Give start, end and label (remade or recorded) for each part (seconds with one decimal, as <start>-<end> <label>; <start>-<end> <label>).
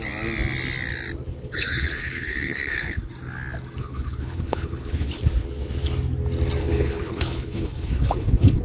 0.0-1.3 recorded; 1.3-3.1 remade; 3.1-3.8 recorded; 3.8-5.2 remade; 5.2-6.6 recorded; 6.6-8.6 remade